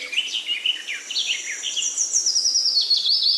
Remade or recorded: recorded